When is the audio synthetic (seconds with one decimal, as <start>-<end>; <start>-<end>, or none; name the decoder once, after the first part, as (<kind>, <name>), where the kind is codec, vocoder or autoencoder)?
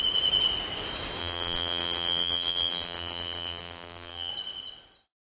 1.2-4.3 (vocoder, BigVGAN v2)